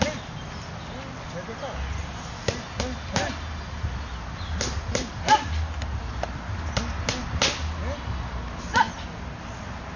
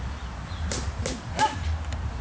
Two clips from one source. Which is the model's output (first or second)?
second